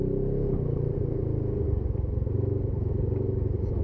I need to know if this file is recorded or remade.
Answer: recorded